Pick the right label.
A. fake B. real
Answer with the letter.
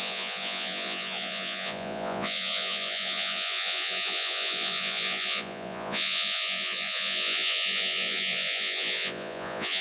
A